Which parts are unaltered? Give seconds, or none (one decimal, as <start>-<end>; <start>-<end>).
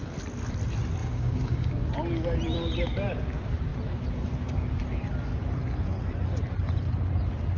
0.0-1.0; 1.9-7.6